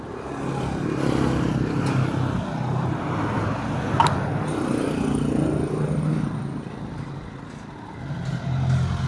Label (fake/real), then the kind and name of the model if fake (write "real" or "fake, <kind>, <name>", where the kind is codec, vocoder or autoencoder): real